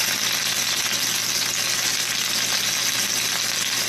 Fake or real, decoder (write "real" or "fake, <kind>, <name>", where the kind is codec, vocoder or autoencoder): real